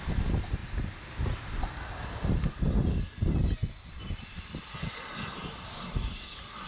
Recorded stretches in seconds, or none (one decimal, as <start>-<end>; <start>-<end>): 0.0-6.7